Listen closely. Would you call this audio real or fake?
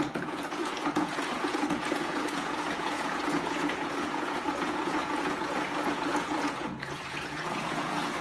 fake